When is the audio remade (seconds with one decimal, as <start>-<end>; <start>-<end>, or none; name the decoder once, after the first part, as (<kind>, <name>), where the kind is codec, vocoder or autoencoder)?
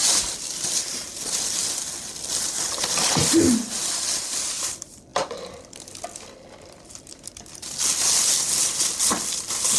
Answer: none